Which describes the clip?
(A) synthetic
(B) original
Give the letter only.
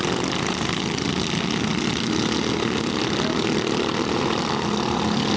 B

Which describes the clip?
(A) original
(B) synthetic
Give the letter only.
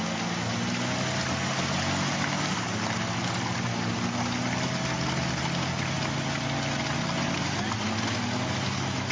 A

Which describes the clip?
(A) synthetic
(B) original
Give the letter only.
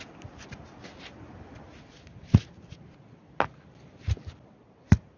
B